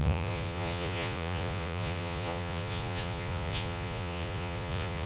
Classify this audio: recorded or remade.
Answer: remade